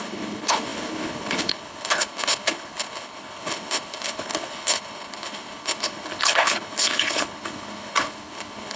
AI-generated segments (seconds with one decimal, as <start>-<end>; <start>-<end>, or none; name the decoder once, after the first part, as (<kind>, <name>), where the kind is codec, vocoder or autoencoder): 0.0-8.8 (codec, HILCodec)